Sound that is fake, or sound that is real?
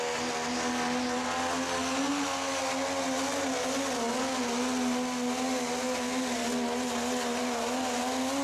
real